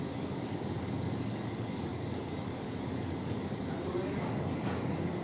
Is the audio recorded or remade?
remade